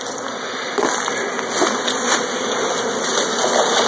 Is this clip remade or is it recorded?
recorded